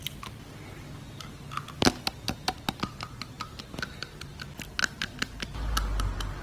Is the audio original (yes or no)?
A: yes